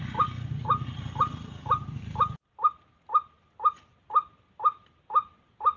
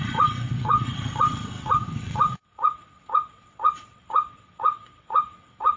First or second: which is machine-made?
second